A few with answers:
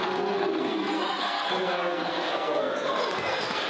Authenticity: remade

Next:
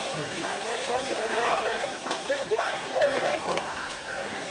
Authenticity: remade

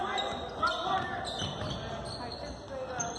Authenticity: recorded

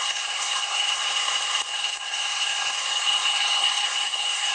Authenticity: remade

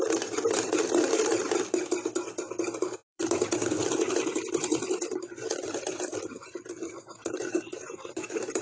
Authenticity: remade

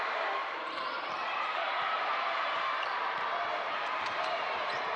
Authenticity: remade